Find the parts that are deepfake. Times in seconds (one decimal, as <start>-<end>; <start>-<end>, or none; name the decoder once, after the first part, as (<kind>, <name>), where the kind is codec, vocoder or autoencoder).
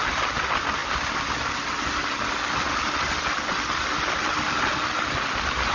none